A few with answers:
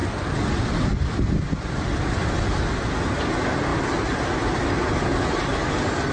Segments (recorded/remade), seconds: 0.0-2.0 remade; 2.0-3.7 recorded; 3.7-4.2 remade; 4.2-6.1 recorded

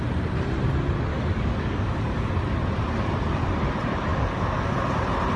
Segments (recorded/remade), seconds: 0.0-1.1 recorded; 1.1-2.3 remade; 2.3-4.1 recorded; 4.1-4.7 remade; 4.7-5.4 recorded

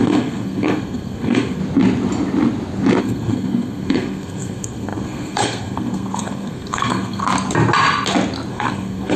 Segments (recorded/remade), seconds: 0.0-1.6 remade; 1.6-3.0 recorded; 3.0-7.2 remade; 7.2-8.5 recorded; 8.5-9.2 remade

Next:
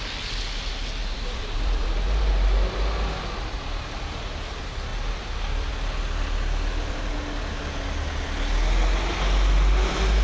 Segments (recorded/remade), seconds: 0.0-1.0 recorded; 1.0-2.3 remade; 2.3-10.2 recorded

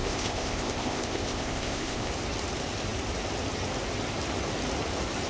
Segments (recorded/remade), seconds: 0.0-2.1 remade; 2.1-5.3 recorded